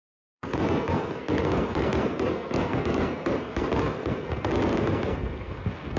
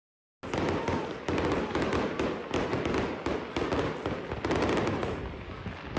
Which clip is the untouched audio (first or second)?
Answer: second